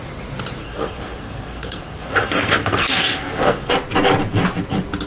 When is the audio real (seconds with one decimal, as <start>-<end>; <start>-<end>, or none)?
0.0-0.6; 3.7-5.1